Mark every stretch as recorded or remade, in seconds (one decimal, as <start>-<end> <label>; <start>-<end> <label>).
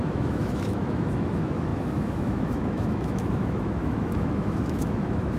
0.0-5.4 remade